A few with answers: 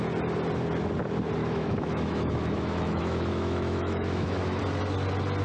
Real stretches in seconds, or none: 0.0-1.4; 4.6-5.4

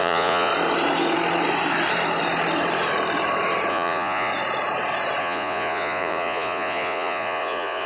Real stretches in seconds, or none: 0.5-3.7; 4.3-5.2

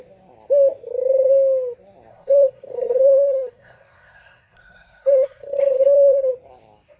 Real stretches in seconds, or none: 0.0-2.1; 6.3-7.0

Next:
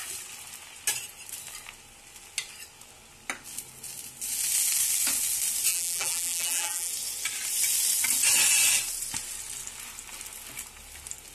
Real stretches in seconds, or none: 0.0-5.7; 6.9-11.3